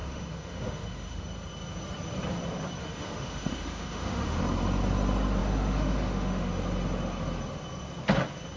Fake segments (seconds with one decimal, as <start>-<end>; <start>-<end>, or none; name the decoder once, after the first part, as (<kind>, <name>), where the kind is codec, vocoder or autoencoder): 0.0-1.2 (autoencoder, DAC-VAE); 2.8-4.4; 5.4-6.7